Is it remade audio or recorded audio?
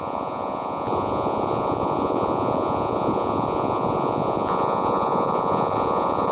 remade